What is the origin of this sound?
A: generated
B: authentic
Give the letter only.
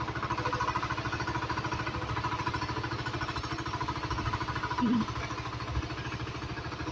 B